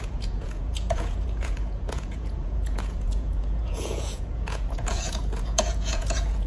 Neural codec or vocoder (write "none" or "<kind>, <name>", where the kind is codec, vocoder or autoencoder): vocoder, Vocos